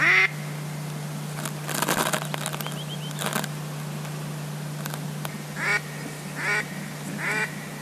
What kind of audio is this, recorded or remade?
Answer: recorded